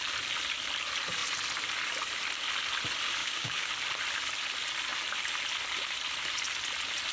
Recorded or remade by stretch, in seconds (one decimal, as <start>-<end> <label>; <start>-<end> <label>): 0.0-3.2 recorded; 3.2-3.7 remade; 3.7-7.1 recorded